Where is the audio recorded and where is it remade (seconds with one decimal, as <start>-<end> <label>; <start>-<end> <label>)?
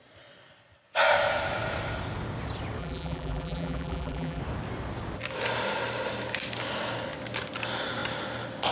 0.0-2.8 recorded; 2.8-4.4 remade; 4.4-8.7 recorded